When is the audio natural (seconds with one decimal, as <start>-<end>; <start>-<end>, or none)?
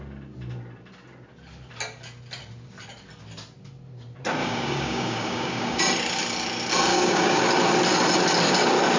0.0-4.4; 5.8-6.9; 7.4-9.0